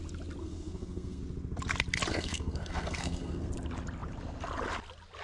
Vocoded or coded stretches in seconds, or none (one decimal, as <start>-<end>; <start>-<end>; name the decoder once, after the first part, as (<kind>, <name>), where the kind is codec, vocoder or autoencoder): 0.4-1.2 (codec, SNAC); 2.1-3.5

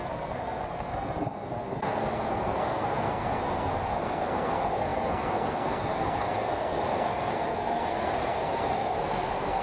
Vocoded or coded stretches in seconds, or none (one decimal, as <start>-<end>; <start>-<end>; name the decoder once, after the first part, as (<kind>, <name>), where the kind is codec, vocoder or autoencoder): 0.0-9.6 (codec, SNAC)

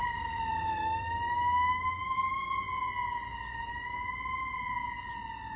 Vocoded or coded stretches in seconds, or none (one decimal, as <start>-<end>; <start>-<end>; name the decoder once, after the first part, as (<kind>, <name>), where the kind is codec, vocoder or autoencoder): 0.0-1.3 (vocoder, BigVGAN v2)

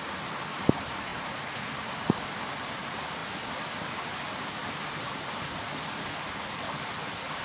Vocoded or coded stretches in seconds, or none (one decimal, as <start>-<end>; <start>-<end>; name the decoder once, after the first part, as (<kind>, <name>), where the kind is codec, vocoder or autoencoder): 1.1-2.2 (vocoder, BigVGAN v2)